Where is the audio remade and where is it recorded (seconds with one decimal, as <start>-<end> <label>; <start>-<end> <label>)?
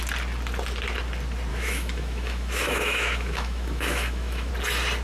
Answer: 0.0-1.5 recorded; 1.5-4.5 remade; 4.5-5.0 recorded